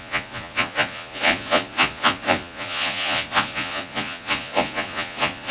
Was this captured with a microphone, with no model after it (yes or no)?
no